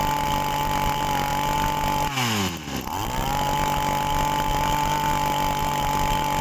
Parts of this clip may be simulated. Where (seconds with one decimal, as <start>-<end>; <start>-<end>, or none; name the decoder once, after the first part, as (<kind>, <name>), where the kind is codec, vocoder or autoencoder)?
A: none